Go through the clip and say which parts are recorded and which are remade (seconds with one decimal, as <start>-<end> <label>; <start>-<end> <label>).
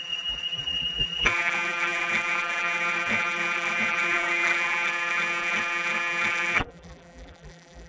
0.0-7.9 remade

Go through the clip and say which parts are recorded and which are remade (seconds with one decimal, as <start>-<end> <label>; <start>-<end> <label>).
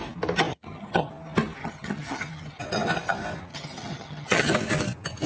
0.0-0.5 recorded; 0.5-1.1 remade; 1.1-1.6 recorded; 1.6-2.6 remade; 2.6-3.5 recorded; 3.5-4.5 remade; 4.5-5.3 recorded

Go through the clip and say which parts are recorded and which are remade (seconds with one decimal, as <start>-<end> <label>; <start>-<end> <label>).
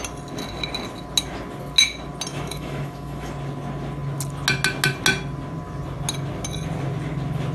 0.0-2.3 recorded; 2.3-3.3 remade; 3.3-7.5 recorded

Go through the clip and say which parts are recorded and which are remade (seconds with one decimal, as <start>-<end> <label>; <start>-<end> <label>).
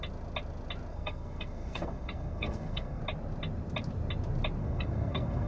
0.0-0.9 recorded; 0.9-3.0 remade; 3.0-4.6 recorded; 4.6-5.5 remade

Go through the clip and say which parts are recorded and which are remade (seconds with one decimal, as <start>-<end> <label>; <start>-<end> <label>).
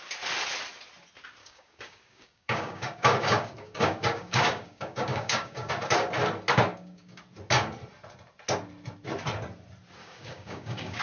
0.0-1.4 recorded; 1.4-5.7 remade; 5.7-6.7 recorded; 6.7-7.2 remade; 7.2-10.0 recorded; 10.0-11.0 remade